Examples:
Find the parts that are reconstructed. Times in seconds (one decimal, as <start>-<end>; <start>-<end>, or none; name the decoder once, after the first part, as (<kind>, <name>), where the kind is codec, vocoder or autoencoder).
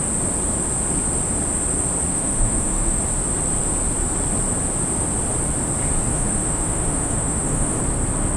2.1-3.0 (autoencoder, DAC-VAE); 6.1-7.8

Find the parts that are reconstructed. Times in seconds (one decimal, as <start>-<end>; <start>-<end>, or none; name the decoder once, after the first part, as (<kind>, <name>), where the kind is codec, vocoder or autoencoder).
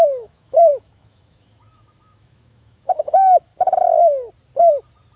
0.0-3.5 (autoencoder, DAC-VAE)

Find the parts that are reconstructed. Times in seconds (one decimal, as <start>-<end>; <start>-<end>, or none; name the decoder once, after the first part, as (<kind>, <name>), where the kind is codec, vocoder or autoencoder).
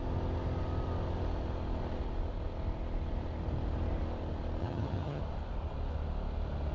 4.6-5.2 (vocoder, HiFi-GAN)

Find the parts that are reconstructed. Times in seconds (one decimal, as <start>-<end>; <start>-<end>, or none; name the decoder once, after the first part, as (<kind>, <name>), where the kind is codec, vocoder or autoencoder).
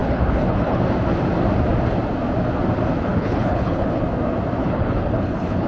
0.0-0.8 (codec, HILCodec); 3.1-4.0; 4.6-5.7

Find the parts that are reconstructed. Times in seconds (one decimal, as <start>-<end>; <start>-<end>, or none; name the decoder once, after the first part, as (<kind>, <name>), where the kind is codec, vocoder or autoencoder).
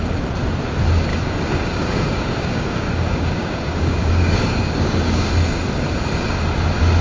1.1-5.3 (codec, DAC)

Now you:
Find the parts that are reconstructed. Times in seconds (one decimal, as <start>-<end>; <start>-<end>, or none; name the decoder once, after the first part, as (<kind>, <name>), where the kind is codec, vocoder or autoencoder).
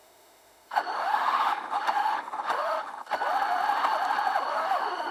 0.0-3.1 (autoencoder, DAC-VAE); 4.5-5.1